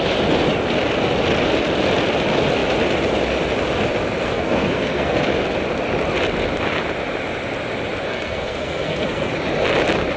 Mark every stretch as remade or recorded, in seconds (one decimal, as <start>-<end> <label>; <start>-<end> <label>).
0.0-4.2 recorded; 4.2-5.2 remade; 5.2-8.1 recorded; 8.1-9.3 remade; 9.3-10.2 recorded